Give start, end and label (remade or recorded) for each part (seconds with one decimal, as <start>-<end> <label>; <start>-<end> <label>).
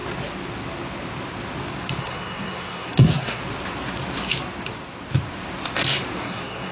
0.0-2.0 recorded; 2.0-3.4 remade; 3.4-6.2 recorded; 6.2-6.7 remade